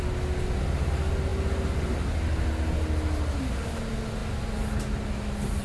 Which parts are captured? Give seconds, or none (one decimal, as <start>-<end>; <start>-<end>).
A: 0.0-5.6